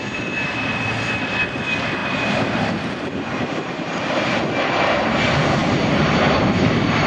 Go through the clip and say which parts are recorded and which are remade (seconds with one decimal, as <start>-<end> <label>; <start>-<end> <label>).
0.0-2.0 recorded; 2.0-4.4 remade; 4.4-5.6 recorded; 5.6-7.1 remade